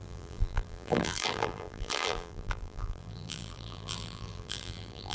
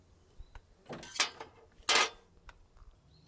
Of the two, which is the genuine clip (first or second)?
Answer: second